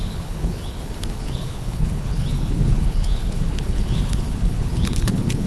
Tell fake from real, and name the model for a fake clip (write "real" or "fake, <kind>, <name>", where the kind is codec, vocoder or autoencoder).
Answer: fake, codec, HILCodec